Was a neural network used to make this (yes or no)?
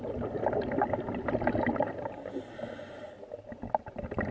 no